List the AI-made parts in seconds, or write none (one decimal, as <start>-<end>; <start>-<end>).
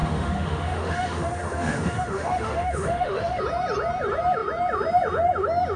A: 0.0-3.4